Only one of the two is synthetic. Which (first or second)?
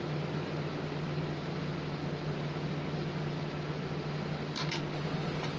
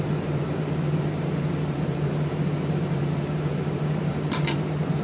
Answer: second